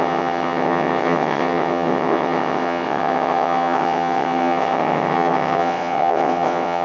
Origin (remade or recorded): remade